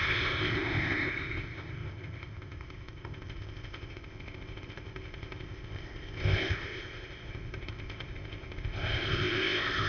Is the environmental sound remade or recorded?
remade